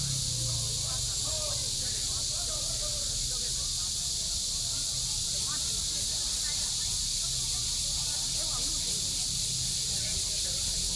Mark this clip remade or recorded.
recorded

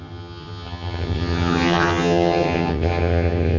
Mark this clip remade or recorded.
remade